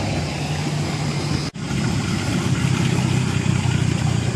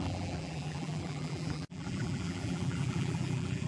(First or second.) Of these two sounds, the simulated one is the second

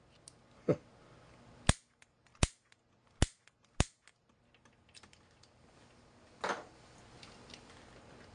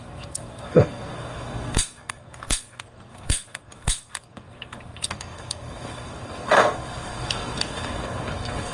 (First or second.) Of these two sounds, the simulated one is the second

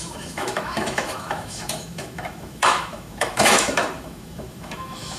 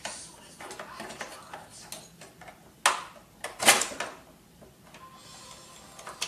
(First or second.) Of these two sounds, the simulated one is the first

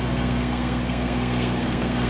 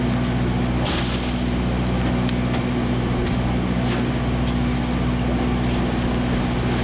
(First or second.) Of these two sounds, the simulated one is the first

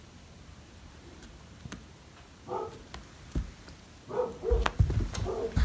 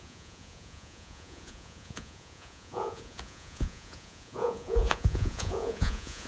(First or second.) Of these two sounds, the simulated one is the second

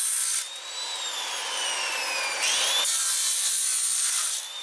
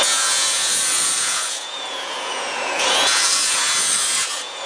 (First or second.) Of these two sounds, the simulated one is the second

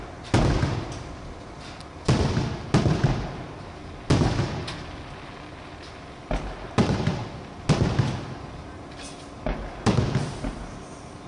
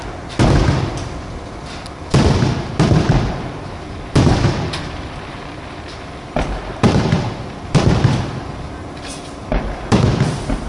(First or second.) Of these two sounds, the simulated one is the second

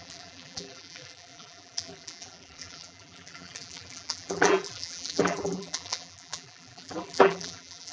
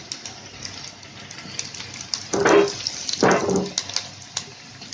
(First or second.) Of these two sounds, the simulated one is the first